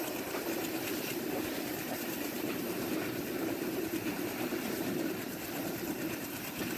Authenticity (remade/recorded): remade